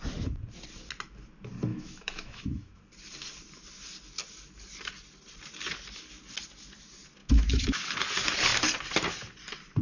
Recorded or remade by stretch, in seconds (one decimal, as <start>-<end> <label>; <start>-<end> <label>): 0.0-1.7 recorded; 1.7-2.8 remade; 2.8-7.2 recorded; 7.2-7.9 remade; 7.9-9.8 recorded